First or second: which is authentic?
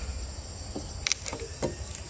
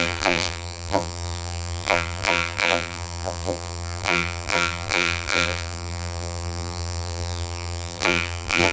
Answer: first